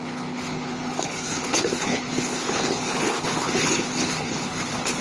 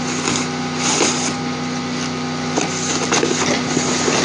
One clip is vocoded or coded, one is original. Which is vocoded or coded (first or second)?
first